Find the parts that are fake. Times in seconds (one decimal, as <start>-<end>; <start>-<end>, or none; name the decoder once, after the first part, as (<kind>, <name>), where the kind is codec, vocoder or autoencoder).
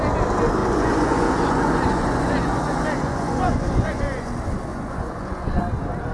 0.6-4.3 (vocoder, Vocos); 4.7-5.6